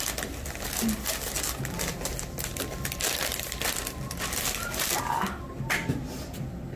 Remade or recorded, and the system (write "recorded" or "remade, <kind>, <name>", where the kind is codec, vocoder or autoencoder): recorded